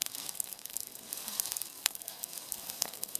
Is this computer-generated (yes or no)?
yes